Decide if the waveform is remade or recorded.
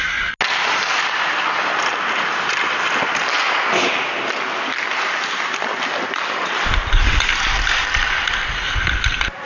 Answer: recorded